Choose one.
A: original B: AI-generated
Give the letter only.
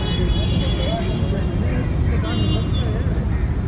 A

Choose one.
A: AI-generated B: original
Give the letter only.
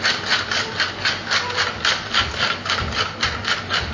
B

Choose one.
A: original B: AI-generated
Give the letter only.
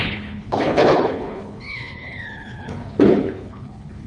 B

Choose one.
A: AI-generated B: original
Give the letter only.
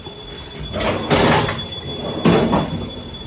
B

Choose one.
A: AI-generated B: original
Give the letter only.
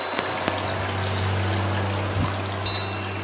B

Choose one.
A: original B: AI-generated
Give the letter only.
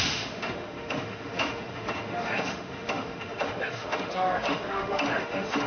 B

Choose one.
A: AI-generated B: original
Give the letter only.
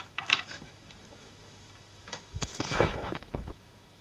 A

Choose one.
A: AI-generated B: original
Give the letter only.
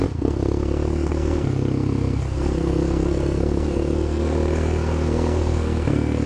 A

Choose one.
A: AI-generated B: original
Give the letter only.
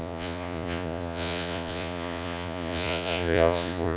A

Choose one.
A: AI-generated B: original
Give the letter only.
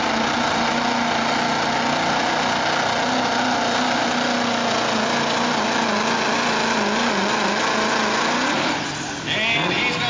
B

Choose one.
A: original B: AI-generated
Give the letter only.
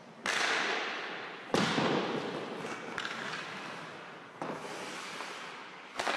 B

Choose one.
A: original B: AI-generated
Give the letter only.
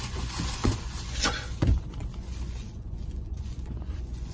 B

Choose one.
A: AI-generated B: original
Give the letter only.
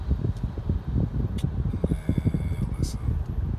B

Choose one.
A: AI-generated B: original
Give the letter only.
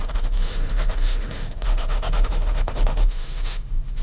A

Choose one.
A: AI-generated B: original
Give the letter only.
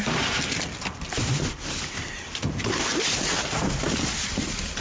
A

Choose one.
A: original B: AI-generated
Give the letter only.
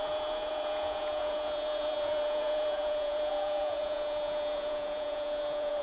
B